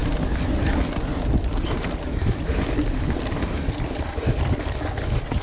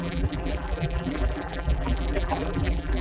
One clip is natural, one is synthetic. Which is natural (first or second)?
first